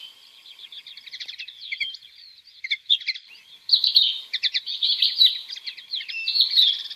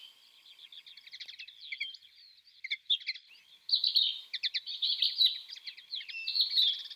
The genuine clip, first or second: second